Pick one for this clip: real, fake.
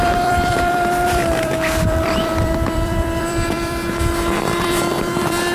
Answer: fake